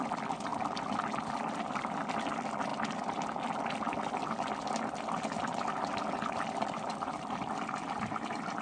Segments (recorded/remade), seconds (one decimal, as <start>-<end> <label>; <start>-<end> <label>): 0.0-0.5 remade; 0.5-1.4 recorded; 1.4-2.7 remade; 2.7-6.1 recorded; 6.1-8.6 remade